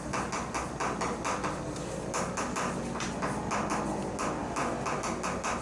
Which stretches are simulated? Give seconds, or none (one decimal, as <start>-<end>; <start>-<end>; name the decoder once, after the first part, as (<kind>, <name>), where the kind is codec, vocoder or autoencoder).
none